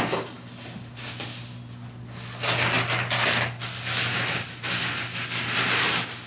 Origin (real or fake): real